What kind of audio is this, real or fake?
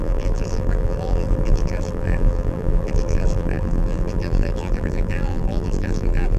fake